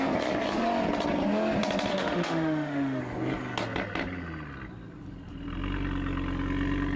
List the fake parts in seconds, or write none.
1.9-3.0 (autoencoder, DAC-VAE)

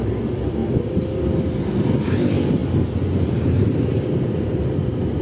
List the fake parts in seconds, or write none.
none